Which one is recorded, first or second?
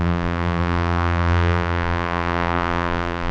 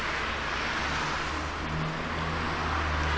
second